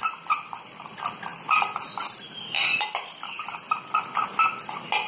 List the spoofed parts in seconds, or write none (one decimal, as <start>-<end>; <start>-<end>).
none